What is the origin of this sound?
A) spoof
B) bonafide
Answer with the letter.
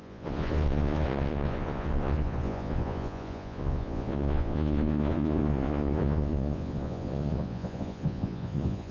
A